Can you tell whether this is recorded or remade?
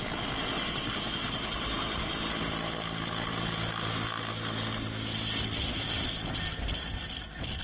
recorded